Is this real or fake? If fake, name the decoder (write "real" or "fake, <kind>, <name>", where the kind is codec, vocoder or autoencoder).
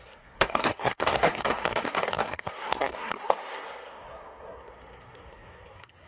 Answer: fake, codec, SNAC